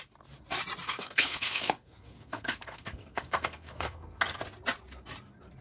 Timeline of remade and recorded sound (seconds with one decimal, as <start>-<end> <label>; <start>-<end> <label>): 0.0-0.8 recorded; 0.8-4.2 remade; 4.2-5.6 recorded